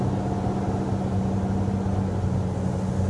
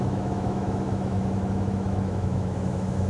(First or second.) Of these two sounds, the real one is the first